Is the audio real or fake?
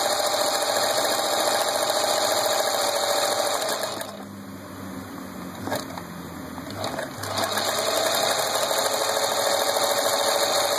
real